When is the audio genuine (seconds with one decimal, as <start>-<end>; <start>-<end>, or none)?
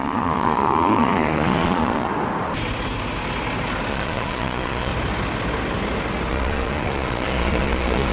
2.1-3.9; 4.9-6.3